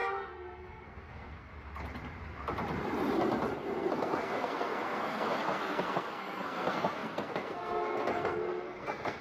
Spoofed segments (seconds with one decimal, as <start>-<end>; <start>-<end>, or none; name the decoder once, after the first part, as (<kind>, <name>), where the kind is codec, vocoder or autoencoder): 0.0-1.5 (codec, SNAC); 3.6-9.2